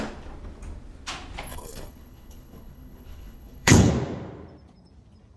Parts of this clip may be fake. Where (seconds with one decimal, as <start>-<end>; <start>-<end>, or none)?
1.5-3.9